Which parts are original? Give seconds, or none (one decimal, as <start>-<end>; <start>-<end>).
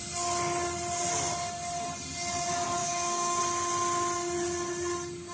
0.0-2.8; 3.4-5.3